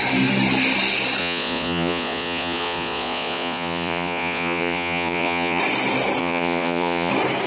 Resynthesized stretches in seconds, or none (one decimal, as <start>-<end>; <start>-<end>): 1.2-5.6; 6.2-7.1